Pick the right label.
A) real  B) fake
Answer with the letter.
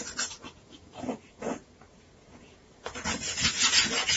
B